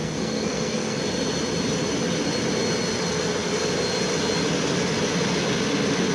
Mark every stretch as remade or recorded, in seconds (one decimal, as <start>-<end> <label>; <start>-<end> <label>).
0.0-1.0 remade; 1.0-6.1 recorded